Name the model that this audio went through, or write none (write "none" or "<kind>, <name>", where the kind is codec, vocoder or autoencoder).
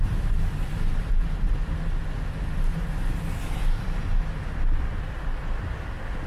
none